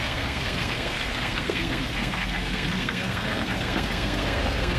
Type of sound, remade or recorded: remade